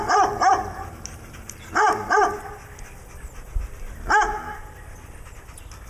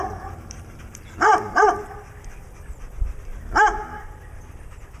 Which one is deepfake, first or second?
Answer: second